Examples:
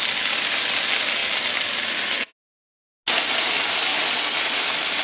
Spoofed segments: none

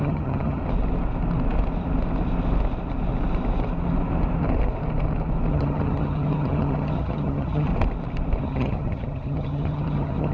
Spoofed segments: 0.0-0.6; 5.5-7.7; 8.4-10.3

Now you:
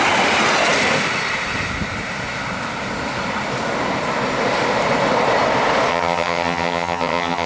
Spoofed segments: 5.9-7.5